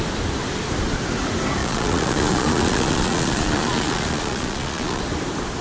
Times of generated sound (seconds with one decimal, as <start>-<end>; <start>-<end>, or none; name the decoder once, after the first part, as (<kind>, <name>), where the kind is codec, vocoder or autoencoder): 1.6-5.0 (vocoder, Vocos)